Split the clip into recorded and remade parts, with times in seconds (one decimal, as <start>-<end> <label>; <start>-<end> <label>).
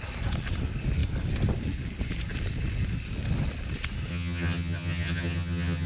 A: 0.0-4.1 recorded; 4.1-5.9 remade